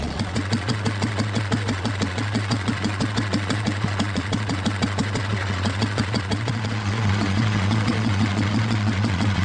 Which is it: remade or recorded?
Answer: remade